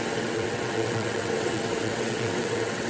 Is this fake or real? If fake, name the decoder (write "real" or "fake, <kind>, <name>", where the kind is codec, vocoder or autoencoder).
fake, vocoder, WaveNeXt